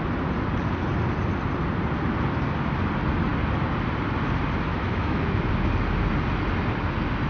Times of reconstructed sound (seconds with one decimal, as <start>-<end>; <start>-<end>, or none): 4.7-5.5